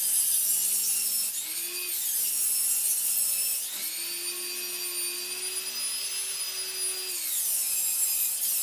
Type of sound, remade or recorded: recorded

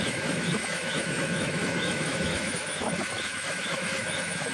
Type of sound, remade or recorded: remade